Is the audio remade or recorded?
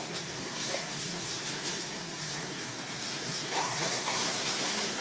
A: remade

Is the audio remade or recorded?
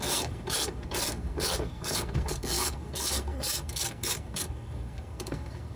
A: remade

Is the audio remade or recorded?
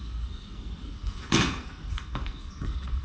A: remade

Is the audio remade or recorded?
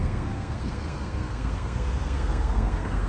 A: remade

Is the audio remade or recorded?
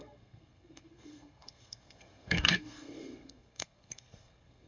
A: remade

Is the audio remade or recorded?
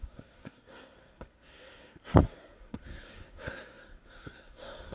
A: remade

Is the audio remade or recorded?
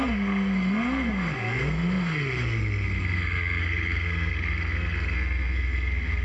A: remade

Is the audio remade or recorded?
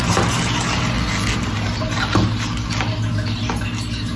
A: recorded